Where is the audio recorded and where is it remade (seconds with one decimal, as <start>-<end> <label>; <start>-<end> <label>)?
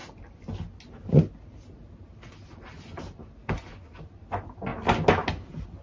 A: 0.0-5.8 recorded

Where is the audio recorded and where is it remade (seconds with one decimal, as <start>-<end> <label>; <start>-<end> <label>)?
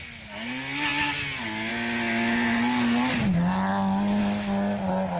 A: 0.0-5.2 recorded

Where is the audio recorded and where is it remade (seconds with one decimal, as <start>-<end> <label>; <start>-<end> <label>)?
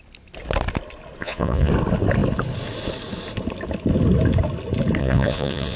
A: 0.0-1.2 recorded; 1.2-1.7 remade; 1.7-5.0 recorded; 5.0-5.8 remade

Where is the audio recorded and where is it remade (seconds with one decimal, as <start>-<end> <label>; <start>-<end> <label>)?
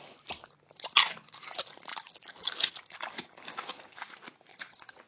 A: 0.0-4.5 recorded; 4.5-5.1 remade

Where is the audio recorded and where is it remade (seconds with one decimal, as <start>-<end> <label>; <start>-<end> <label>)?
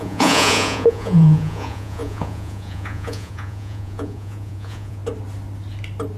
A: 0.0-5.0 remade; 5.0-6.2 recorded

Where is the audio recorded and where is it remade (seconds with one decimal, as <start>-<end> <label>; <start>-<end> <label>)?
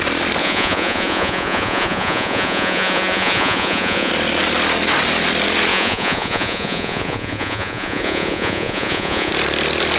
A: 0.0-0.4 recorded; 0.4-4.1 remade; 4.1-5.7 recorded; 5.7-9.3 remade; 9.3-10.0 recorded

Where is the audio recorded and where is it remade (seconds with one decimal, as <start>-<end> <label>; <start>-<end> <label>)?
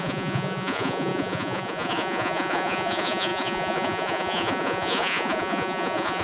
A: 0.0-6.2 remade